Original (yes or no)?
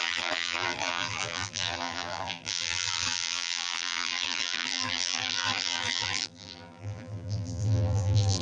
no